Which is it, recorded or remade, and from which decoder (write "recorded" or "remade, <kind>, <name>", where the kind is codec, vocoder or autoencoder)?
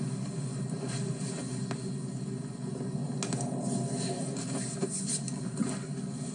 recorded